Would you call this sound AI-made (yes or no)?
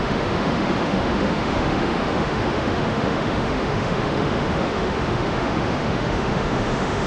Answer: yes